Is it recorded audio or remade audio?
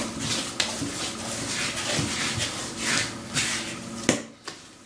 recorded